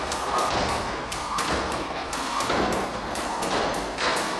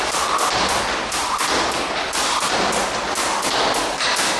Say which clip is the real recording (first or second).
second